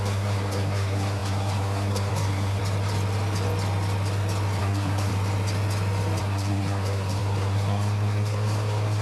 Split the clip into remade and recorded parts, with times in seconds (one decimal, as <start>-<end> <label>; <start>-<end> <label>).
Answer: 0.0-2.6 remade; 2.6-4.6 recorded; 4.6-5.1 remade; 5.1-6.2 recorded; 6.2-9.0 remade